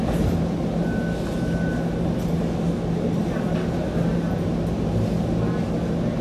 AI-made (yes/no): no